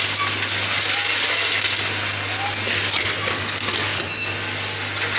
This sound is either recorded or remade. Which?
recorded